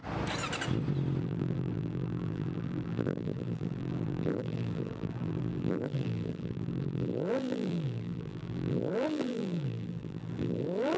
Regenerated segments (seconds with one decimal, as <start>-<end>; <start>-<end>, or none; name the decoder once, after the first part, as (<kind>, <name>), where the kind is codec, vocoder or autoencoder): 1.2-11.0 (vocoder, BigVGAN v2)